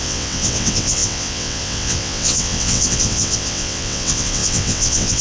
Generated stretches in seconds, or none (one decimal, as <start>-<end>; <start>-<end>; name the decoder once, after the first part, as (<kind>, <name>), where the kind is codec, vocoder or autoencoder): 0.0-5.2 (vocoder, WaveNeXt)